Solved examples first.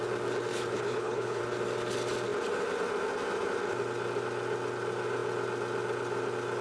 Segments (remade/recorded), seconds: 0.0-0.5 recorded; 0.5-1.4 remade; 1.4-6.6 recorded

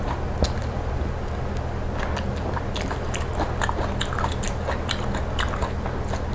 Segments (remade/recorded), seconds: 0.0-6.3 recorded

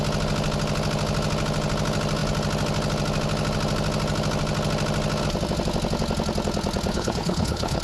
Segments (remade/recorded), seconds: 0.0-6.9 recorded; 6.9-7.8 remade

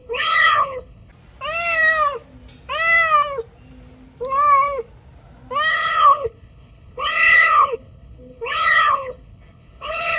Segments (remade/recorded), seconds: 0.0-1.1 remade; 1.1-5.7 recorded; 5.7-10.2 remade

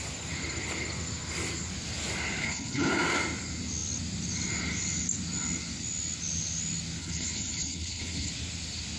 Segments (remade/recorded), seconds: 0.0-2.4 recorded; 2.4-2.9 remade; 2.9-7.0 recorded; 7.0-8.3 remade; 8.3-9.0 recorded

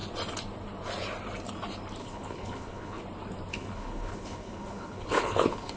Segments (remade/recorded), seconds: 0.0-2.0 recorded; 2.0-3.0 remade; 3.0-3.5 recorded; 3.5-5.8 remade